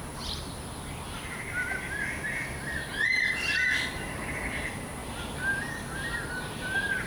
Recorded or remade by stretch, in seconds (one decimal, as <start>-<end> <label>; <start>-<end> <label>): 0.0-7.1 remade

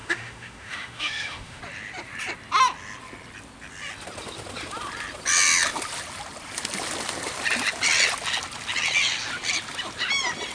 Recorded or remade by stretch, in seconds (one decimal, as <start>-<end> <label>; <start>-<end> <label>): 0.0-1.6 remade; 1.6-10.5 recorded

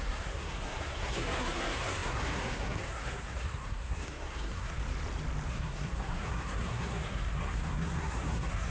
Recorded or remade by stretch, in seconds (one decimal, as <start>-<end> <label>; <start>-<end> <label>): 0.0-4.8 remade; 4.8-5.5 recorded; 5.5-8.7 remade

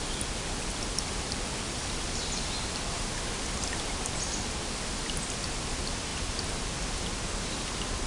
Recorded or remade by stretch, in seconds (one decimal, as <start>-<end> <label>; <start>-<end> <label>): 0.0-8.1 recorded

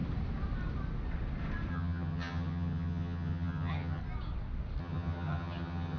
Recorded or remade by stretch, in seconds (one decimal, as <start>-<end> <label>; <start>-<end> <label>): 0.0-1.7 recorded; 1.7-4.0 remade; 4.0-4.8 recorded; 4.8-6.0 remade

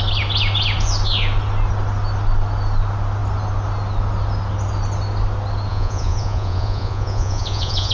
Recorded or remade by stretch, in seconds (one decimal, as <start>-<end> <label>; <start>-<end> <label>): 0.0-5.7 recorded; 5.7-7.9 remade

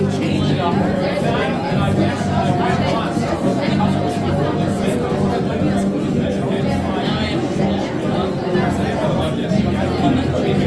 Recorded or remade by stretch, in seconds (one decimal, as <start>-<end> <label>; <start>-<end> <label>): 0.0-1.4 recorded; 1.4-2.8 remade; 2.8-3.5 recorded; 3.5-4.3 remade; 4.3-10.7 recorded